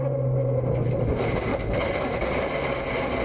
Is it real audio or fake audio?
real